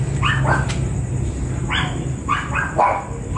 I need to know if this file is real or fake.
real